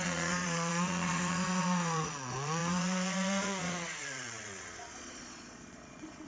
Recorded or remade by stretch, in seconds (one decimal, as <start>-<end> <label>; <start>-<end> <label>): 0.0-6.3 remade